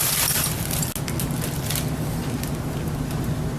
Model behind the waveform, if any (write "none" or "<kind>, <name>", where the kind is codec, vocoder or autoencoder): none